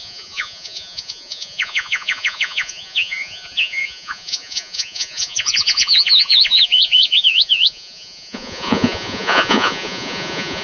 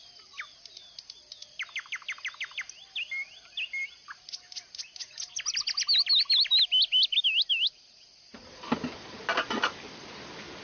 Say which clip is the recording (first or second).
second